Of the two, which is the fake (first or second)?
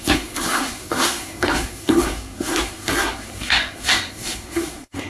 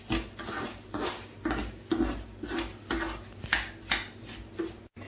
first